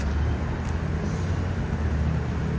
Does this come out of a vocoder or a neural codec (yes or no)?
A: no